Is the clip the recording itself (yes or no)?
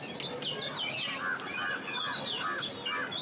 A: yes